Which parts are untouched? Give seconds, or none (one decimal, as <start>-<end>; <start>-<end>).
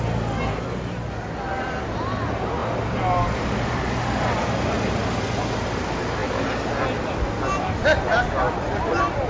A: 0.0-9.3